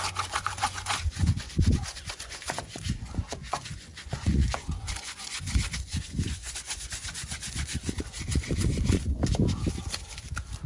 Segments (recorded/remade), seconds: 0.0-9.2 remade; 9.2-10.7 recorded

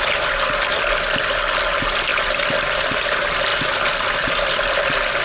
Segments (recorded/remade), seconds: 0.0-5.2 recorded

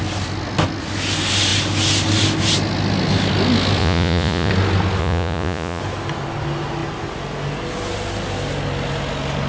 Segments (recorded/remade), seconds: 0.0-3.8 recorded; 3.8-4.5 remade; 4.5-5.0 recorded; 5.0-5.8 remade; 5.8-9.5 recorded

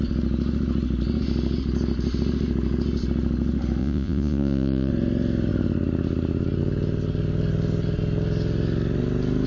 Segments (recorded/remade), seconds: 0.0-3.8 recorded; 3.8-4.9 remade; 4.9-9.5 recorded

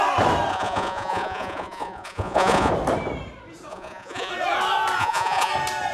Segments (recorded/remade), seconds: 0.0-0.5 recorded; 0.5-2.7 remade; 2.7-3.7 recorded; 3.7-4.3 remade; 4.3-5.0 recorded; 5.0-5.5 remade; 5.5-5.9 recorded